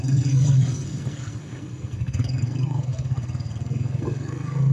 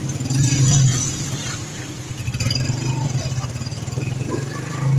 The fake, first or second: first